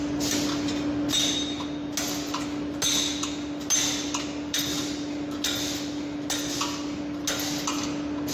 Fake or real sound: real